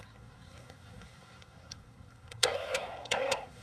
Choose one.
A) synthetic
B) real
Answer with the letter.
A